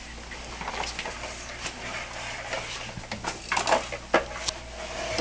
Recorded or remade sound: recorded